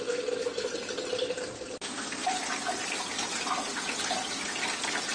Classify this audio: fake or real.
real